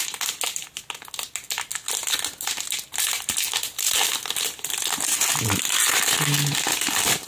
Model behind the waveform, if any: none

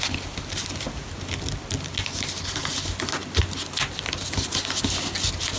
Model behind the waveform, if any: none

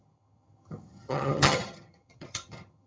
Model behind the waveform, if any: vocoder, HiFi-GAN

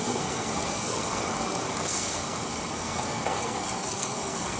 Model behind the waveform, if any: codec, SNAC